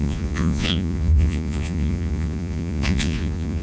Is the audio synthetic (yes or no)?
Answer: yes